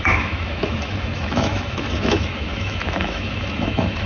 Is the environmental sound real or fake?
fake